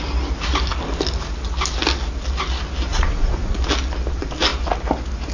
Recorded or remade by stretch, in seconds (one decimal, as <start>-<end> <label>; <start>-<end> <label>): 0.0-2.9 recorded; 2.9-3.6 remade; 3.6-5.3 recorded